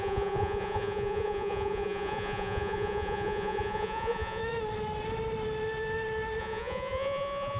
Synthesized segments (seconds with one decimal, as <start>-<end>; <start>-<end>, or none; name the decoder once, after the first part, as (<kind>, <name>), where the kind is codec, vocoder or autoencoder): 0.0-4.4 (vocoder, Vocos); 6.4-7.6